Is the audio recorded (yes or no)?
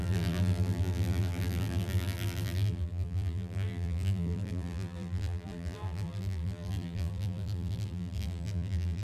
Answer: no